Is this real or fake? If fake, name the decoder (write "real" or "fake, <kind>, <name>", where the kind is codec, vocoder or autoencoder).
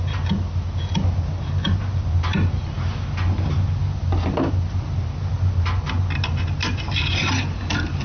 fake, vocoder, BigVGAN v2